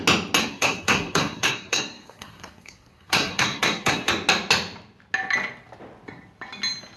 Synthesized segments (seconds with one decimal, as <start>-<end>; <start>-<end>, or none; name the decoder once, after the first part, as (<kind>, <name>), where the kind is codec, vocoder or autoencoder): 0.4-4.1 (codec, SNAC)